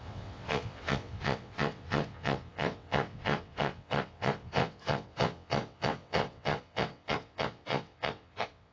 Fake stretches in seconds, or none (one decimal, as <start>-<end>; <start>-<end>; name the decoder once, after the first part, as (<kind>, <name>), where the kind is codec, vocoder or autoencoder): 0.0-8.7 (vocoder, WaveNeXt)